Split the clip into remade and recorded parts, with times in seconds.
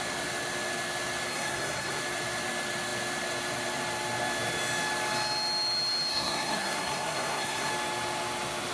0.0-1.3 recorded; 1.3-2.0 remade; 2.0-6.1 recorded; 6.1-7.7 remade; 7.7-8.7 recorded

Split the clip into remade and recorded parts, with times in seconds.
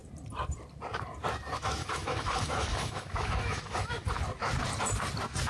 0.0-1.8 recorded; 1.8-4.1 remade; 4.1-5.5 recorded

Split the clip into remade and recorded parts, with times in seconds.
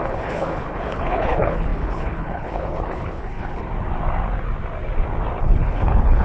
0.0-3.6 remade; 3.6-5.4 recorded; 5.4-6.2 remade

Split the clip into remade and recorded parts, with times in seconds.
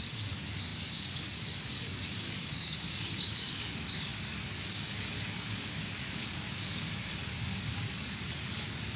0.0-9.0 remade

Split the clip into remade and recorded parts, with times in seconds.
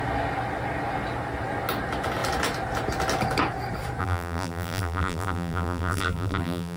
0.0-4.0 recorded; 4.0-6.8 remade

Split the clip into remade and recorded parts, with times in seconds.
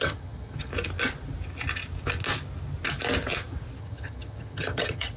0.0-0.7 remade; 0.7-3.8 recorded; 3.8-5.2 remade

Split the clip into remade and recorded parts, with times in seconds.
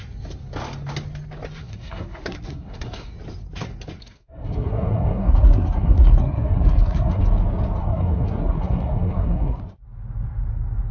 0.0-1.6 recorded; 1.6-3.1 remade; 3.1-4.0 recorded; 4.0-7.2 remade; 7.2-7.8 recorded; 7.8-9.6 remade; 9.6-10.9 recorded